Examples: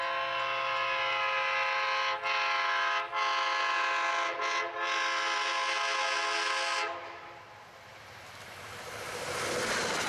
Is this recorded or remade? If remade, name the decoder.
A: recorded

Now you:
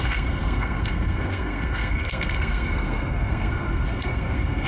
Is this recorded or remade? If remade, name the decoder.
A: remade, codec, SNAC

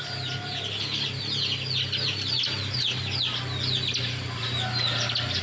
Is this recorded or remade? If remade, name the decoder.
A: recorded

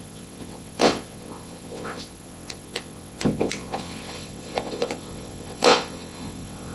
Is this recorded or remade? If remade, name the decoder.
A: remade, vocoder, WaveNeXt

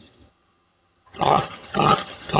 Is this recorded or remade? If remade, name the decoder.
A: remade, vocoder, HiFi-GAN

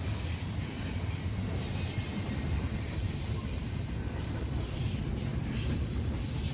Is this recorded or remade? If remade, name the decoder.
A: remade, vocoder, BigVGAN v2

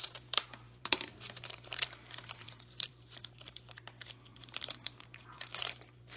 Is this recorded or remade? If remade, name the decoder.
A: remade, vocoder, BigVGAN v2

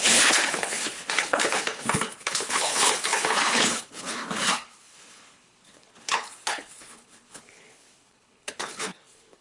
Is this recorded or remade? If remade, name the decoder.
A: remade, codec, HILCodec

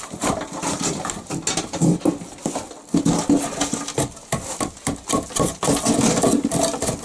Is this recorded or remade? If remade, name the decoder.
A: recorded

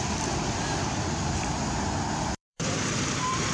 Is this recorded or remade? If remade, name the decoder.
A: remade, vocoder, BigVGAN v2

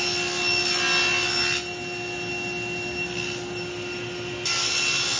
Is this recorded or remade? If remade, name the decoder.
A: recorded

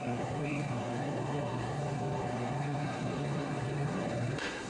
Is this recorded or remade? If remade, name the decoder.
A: remade, codec, SNAC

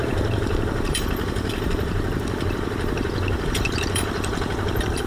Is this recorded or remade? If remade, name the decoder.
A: remade, vocoder, BigVGAN v2